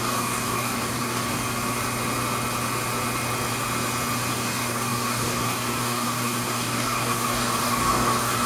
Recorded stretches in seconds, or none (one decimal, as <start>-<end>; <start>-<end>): 1.4-4.3